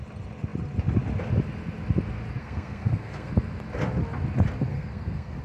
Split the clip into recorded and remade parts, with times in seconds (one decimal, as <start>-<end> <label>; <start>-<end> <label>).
0.0-2.4 recorded; 2.4-3.3 remade; 3.3-4.7 recorded; 4.7-5.4 remade